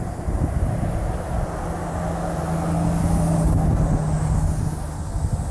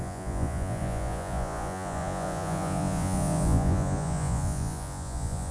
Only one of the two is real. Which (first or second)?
first